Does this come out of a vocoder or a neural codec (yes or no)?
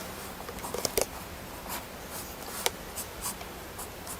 yes